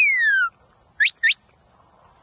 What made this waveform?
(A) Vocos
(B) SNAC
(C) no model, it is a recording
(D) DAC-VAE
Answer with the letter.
C